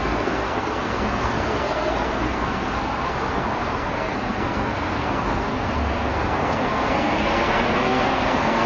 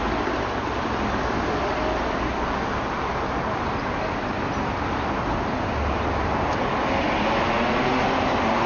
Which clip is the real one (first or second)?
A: second